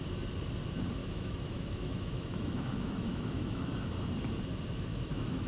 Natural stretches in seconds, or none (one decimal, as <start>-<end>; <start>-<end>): 0.0-1.0; 3.8-4.9